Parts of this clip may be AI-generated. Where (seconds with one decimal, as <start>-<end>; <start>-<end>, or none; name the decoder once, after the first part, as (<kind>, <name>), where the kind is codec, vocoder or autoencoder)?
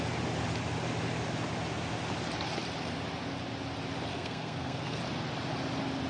4.1-5.0 (codec, SNAC)